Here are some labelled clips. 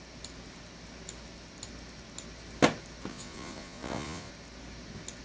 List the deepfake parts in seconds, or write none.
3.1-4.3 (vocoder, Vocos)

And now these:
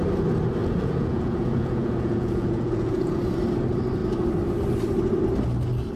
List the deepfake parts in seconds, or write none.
0.6-3.2 (vocoder, Vocos)